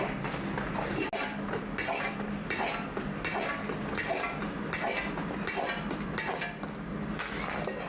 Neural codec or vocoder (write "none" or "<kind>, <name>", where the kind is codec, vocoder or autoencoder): none